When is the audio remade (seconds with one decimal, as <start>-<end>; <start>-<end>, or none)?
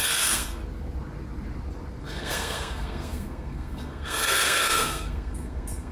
0.0-0.6; 2.0-5.9